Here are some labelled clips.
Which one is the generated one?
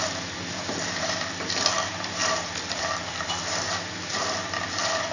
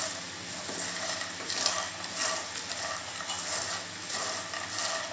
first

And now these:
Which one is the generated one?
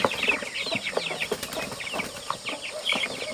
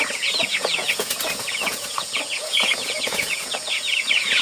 second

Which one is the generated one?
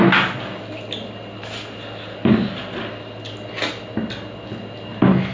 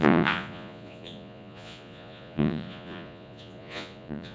second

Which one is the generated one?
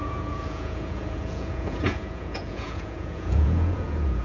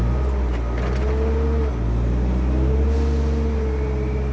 first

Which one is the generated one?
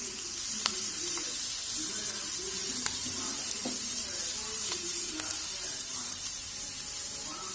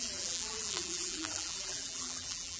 second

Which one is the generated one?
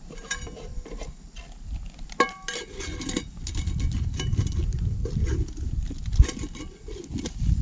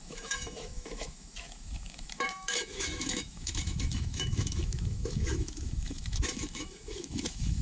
second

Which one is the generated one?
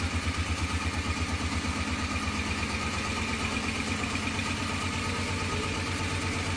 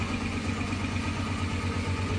second